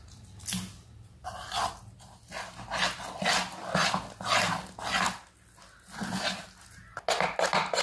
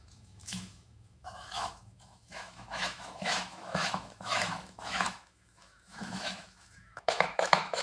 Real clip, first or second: first